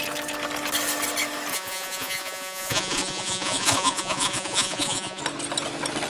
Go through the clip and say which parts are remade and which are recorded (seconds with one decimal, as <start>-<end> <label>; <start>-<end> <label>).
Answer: 0.0-1.5 recorded; 1.5-5.2 remade; 5.2-6.1 recorded